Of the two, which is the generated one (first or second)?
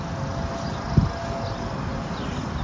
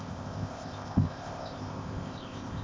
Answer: second